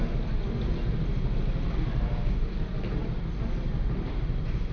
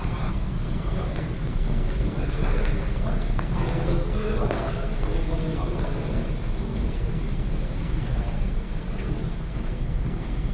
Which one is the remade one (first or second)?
second